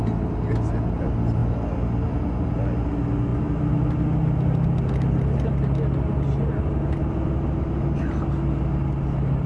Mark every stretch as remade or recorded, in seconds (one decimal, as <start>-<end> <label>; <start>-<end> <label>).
0.0-9.5 recorded